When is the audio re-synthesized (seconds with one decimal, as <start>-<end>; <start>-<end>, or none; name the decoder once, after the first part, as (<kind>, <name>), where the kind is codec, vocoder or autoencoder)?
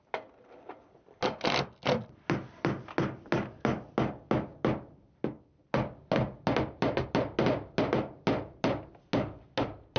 none